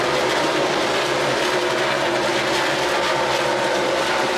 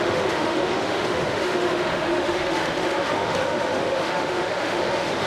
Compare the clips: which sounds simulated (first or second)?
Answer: second